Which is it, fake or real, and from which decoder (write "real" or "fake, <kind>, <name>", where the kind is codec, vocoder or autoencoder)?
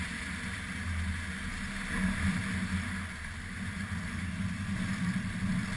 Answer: real